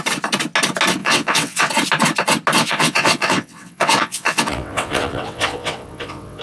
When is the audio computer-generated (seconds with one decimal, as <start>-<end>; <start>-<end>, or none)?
1.0-1.7; 2.6-6.4